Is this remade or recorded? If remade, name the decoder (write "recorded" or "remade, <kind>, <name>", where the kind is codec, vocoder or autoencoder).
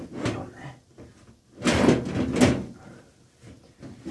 recorded